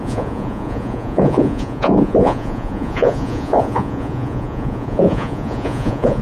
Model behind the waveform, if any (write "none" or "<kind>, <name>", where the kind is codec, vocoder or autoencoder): vocoder, Vocos